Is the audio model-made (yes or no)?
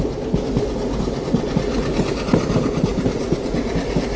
no